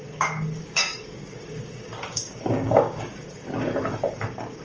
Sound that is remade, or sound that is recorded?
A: remade